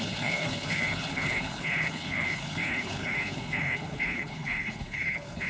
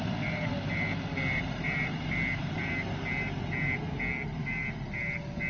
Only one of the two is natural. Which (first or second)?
second